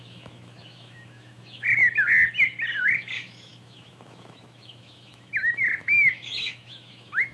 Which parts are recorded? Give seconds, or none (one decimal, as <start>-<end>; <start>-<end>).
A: 1.8-2.8